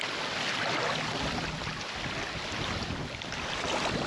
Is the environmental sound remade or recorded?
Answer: recorded